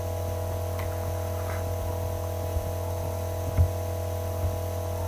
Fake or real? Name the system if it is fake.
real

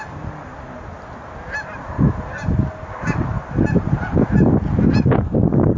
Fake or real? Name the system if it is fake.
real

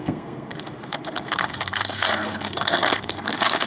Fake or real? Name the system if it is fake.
fake, codec, SNAC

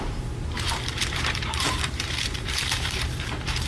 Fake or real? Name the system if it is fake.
fake, vocoder, BigVGAN v2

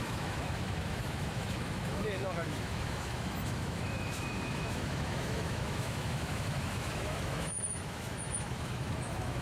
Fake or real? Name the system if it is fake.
fake, autoencoder, DAC-VAE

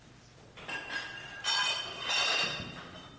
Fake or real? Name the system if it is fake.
fake, vocoder, BigVGAN v2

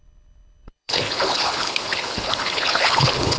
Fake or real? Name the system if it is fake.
fake, codec, HILCodec